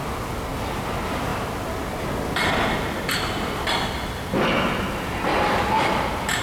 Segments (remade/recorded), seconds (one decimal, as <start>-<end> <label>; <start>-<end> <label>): 0.0-6.4 recorded